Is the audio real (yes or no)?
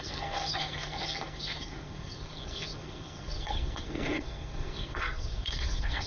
no